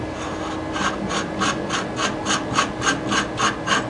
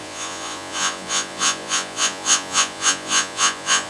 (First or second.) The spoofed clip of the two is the second